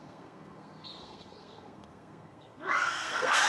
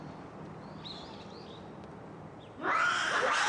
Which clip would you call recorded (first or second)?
second